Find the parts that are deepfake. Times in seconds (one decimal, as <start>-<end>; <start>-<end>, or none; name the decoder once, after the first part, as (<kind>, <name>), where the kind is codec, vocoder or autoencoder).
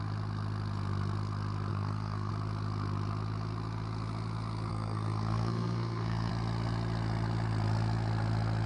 1.7-2.3 (codec, SNAC); 4.7-6.3